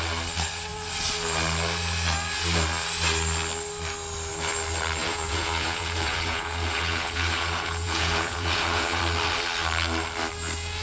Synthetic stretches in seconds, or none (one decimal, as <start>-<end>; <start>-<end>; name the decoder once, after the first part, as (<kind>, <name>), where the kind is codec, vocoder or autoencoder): 5.0-9.0 (vocoder, Vocos)